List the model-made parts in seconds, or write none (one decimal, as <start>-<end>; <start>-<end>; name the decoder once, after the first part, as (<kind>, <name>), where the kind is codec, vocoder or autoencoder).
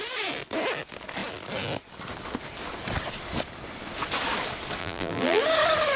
4.8-5.4 (vocoder, BigVGAN v2)